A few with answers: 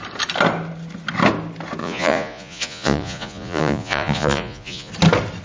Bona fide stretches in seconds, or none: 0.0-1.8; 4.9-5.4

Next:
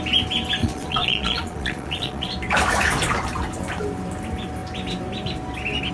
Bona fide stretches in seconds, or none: 0.0-0.6; 2.3-5.9